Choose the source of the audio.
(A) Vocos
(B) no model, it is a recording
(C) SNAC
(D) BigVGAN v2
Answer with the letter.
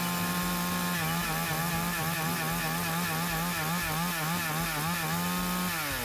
B